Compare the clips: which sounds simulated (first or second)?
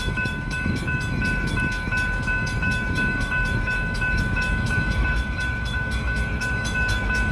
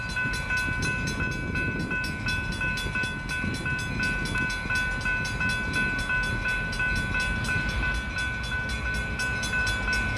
first